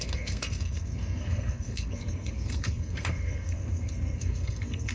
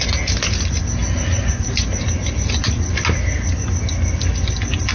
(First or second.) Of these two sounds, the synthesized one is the first